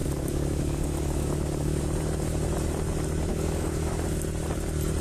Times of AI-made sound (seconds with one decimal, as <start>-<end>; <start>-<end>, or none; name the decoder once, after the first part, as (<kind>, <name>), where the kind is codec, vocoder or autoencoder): 0.0-1.8 (codec, DAC); 3.3-3.9